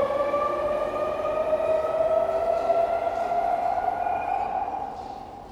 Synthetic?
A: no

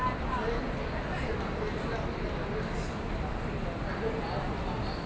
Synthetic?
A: no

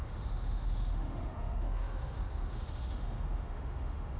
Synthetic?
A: yes